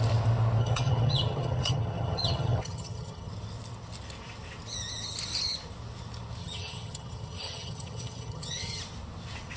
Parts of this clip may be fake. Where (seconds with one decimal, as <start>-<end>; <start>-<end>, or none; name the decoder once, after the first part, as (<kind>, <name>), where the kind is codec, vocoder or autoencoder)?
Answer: 0.6-3.3 (vocoder, HiFi-GAN); 6.4-8.8